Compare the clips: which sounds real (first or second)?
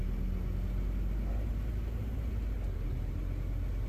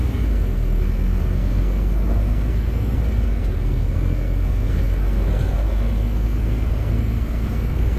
first